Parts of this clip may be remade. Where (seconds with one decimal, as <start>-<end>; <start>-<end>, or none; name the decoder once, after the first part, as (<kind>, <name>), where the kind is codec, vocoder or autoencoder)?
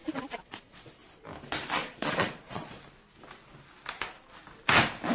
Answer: 0.0-0.9 (vocoder, Vocos); 1.8-2.8